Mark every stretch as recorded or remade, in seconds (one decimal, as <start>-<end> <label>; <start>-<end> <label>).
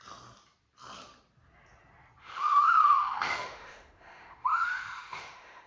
0.0-2.2 recorded; 2.2-5.7 remade